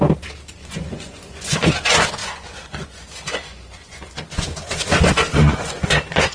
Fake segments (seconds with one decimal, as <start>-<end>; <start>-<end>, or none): 0.6-1.7; 2.2-4.2; 5.4-6.3